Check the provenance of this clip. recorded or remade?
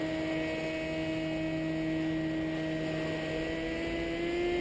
recorded